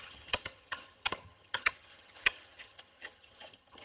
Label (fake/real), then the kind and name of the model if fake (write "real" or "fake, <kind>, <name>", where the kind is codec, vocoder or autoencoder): fake, vocoder, HiFi-GAN